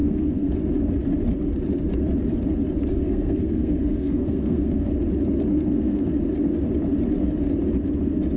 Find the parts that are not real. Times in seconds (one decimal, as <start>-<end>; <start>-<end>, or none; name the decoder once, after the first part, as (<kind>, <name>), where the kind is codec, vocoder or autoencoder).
0.0-0.5 (codec, SNAC); 2.9-4.9; 5.5-6.1